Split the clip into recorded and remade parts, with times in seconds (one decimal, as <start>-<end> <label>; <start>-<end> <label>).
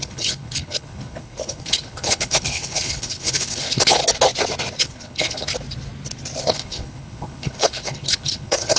0.0-4.0 remade; 4.0-4.8 recorded; 4.8-5.5 remade; 5.5-6.4 recorded; 6.4-8.8 remade